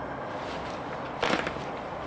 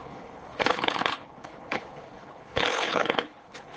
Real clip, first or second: first